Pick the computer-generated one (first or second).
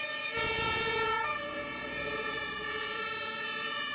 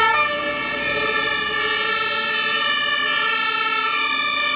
first